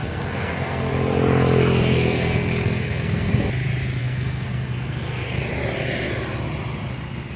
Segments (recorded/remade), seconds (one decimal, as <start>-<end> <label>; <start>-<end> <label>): 0.0-0.9 remade; 0.9-1.8 recorded; 1.8-3.3 remade; 3.3-4.0 recorded; 4.0-5.4 remade; 5.4-7.4 recorded